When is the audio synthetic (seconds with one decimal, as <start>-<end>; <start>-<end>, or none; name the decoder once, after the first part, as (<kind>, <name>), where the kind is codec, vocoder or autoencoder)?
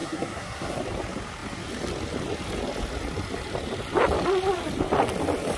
0.0-0.8 (codec, SNAC)